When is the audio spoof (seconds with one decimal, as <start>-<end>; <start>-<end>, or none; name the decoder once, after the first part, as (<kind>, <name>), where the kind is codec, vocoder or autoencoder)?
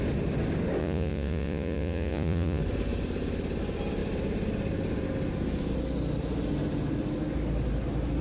0.8-2.6 (vocoder, Vocos)